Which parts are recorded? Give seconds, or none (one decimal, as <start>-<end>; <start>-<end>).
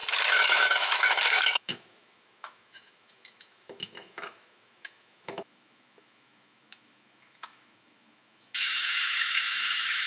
none